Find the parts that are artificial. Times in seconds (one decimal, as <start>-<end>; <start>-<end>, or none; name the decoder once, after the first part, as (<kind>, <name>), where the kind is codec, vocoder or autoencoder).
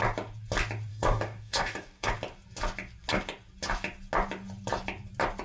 0.9-2.1 (codec, DAC)